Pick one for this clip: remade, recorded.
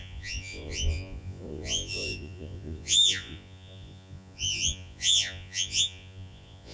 remade